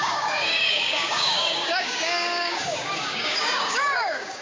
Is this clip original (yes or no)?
no